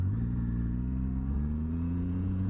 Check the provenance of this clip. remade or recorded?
remade